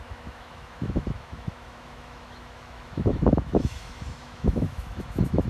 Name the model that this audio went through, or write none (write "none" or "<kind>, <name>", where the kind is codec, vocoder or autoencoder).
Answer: autoencoder, DAC-VAE